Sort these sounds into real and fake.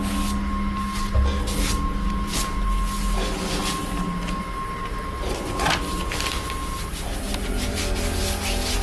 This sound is real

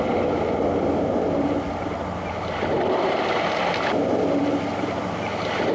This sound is real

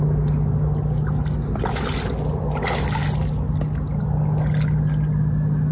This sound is real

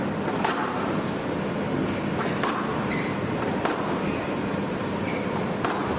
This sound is real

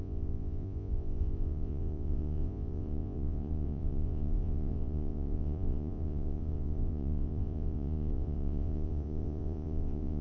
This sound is fake